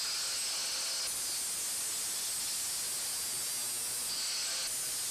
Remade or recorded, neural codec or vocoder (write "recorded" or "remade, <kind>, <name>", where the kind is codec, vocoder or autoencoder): recorded